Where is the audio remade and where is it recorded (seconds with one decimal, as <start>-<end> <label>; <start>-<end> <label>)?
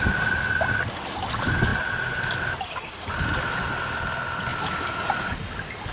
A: 0.0-5.9 recorded